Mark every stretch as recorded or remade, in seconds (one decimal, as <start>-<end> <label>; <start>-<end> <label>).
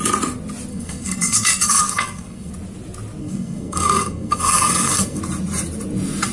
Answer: 0.0-0.7 recorded; 0.7-2.5 remade; 2.5-3.2 recorded; 3.2-5.2 remade; 5.2-6.3 recorded